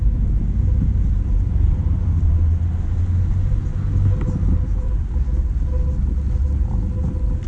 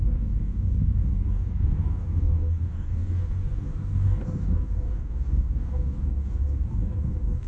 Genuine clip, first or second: first